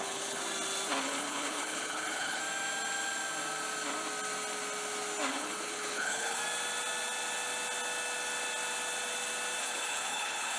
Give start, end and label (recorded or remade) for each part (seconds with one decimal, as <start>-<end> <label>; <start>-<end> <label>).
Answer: 0.0-0.4 remade; 0.4-1.0 recorded; 1.0-2.4 remade; 2.4-5.3 recorded; 5.3-6.4 remade; 6.4-9.6 recorded; 9.6-10.6 remade

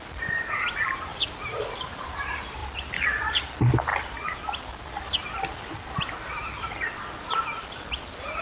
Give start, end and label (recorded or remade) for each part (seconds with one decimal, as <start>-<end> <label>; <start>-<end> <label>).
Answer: 0.0-8.4 recorded